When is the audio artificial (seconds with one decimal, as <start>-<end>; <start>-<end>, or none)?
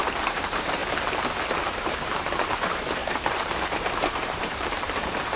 0.0-0.8; 1.6-5.4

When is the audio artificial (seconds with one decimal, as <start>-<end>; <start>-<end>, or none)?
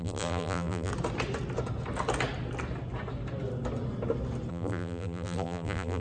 0.0-0.9; 4.5-6.0